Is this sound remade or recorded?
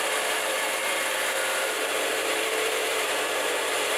remade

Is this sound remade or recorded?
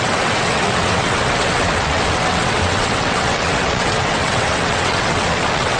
remade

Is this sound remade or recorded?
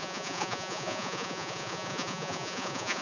remade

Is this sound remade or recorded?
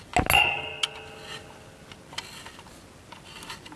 recorded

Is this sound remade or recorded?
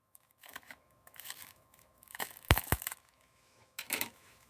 remade